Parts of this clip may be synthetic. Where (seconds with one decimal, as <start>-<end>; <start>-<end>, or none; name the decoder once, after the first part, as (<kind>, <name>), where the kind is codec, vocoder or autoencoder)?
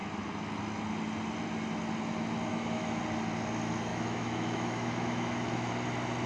2.5-3.0 (autoencoder, DAC-VAE); 3.9-5.7